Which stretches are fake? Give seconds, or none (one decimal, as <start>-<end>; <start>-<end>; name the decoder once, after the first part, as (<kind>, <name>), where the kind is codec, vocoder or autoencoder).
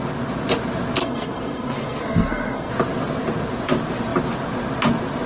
1.0-2.7 (codec, SNAC)